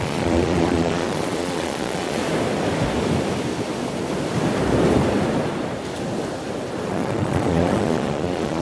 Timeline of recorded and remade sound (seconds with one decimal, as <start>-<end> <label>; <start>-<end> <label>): 0.0-2.2 remade; 2.2-6.9 recorded; 6.9-8.6 remade